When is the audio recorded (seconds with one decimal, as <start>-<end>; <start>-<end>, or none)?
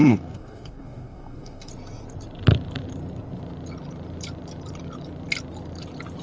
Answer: 1.7-6.2